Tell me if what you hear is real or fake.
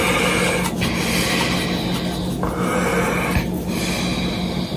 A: real